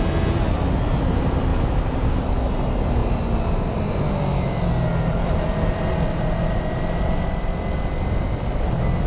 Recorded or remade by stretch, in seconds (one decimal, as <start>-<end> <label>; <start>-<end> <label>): 0.0-1.5 recorded; 1.5-2.3 remade; 2.3-9.1 recorded